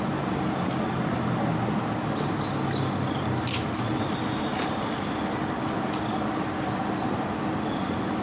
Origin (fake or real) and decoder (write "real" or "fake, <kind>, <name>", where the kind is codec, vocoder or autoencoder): real